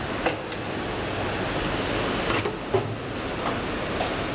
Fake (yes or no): no